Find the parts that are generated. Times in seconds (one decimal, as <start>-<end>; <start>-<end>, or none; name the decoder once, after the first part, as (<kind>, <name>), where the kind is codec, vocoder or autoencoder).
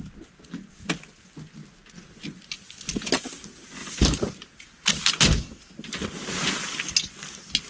none